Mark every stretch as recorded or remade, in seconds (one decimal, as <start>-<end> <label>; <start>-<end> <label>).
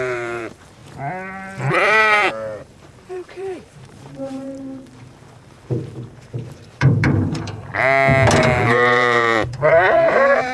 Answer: 0.0-0.8 remade; 0.8-1.7 recorded; 1.7-7.7 remade; 7.7-8.4 recorded; 8.4-10.5 remade